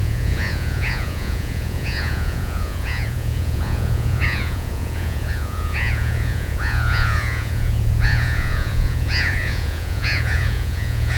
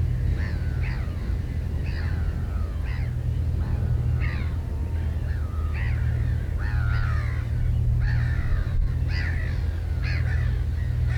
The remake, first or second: first